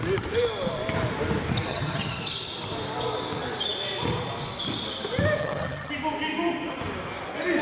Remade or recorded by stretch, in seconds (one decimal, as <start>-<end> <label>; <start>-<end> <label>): 0.0-1.7 recorded; 1.7-2.2 remade; 2.2-5.4 recorded; 5.4-5.9 remade; 5.9-7.6 recorded